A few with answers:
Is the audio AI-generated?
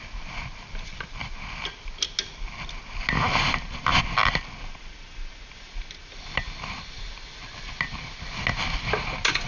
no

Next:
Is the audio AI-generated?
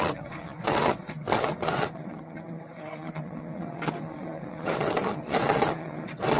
yes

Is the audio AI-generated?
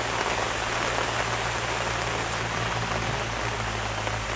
no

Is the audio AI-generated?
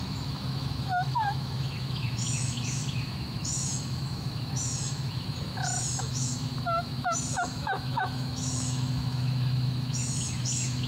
yes